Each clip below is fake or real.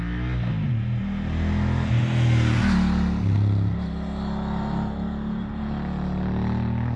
real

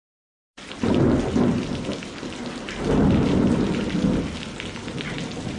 real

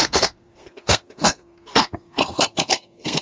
fake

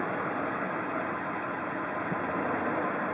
real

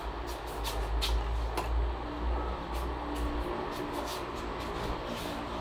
real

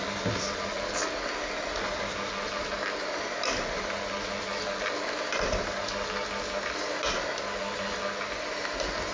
real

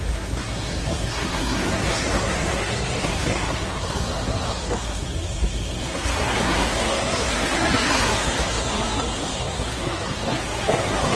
fake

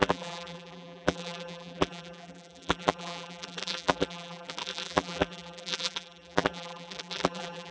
fake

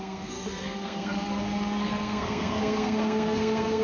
fake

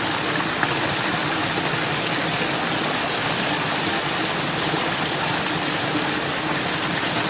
real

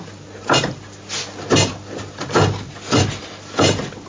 real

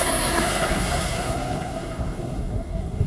fake